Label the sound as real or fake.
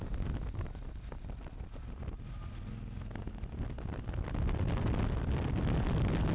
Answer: real